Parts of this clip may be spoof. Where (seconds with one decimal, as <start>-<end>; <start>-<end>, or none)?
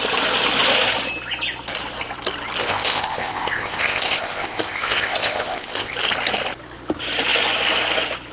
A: 2.6-5.9